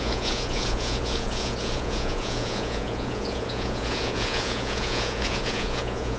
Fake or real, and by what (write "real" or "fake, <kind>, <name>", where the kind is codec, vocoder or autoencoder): fake, vocoder, Vocos